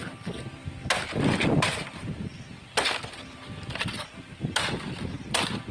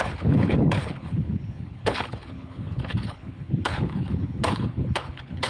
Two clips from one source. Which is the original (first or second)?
first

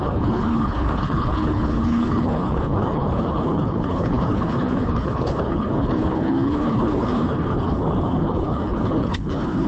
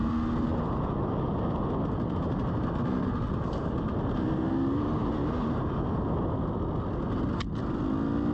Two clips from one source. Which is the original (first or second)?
second